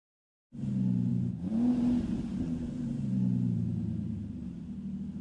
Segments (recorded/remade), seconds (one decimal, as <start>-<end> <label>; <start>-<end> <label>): 0.0-0.7 remade; 0.7-1.1 recorded; 1.1-4.2 remade; 4.2-5.2 recorded